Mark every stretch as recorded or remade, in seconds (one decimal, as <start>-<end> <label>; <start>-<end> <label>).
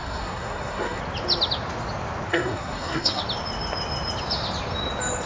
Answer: 0.0-1.0 remade; 1.0-2.3 recorded; 2.3-3.2 remade; 3.2-5.3 recorded